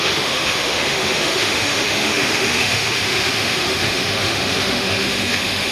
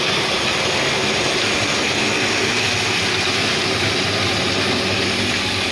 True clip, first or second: second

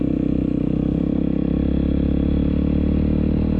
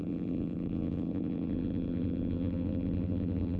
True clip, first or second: first